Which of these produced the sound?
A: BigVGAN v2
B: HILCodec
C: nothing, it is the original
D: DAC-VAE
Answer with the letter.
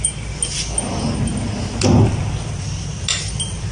C